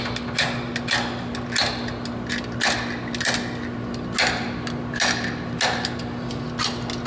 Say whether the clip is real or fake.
real